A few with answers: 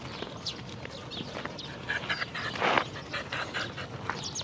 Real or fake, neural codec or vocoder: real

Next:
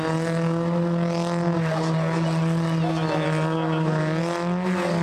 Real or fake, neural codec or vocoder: real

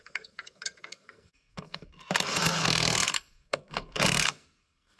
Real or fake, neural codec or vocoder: fake, codec, SNAC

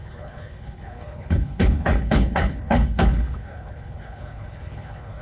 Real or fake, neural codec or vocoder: fake, codec, HILCodec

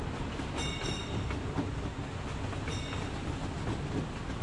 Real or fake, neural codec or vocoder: real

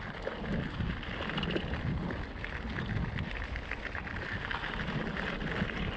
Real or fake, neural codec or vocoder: real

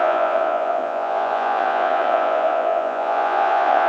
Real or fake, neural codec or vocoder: fake, vocoder, Vocos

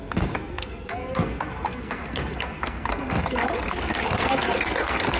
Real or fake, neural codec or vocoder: fake, codec, SNAC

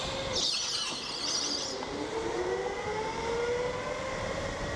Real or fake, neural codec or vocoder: real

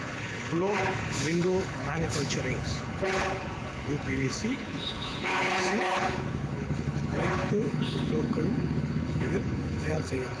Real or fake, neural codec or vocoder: fake, codec, HILCodec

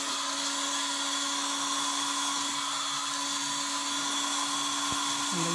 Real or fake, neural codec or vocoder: real